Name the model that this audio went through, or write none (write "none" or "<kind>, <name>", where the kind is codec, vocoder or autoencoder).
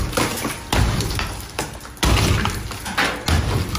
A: none